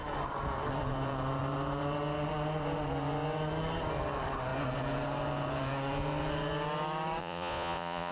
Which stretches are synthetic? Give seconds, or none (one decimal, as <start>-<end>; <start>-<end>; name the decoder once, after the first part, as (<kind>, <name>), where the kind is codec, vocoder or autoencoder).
7.2-8.1 (vocoder, Vocos)